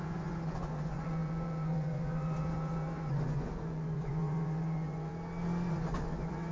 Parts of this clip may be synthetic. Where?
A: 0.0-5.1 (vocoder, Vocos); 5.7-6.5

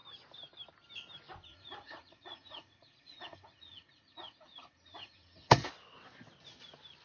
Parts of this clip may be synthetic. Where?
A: 1.5-5.7 (vocoder, Vocos)

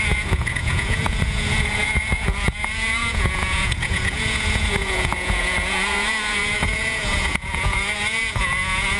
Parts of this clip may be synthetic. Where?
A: 0.0-9.0 (vocoder, Vocos)